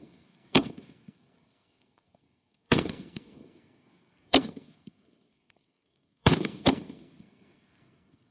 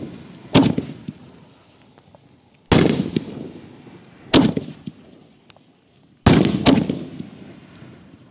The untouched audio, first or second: second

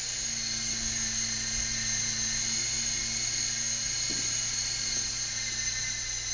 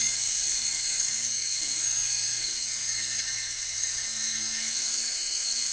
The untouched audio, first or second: first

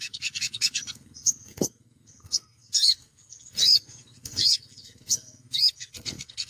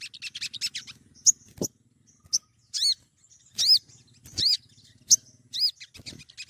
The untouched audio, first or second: second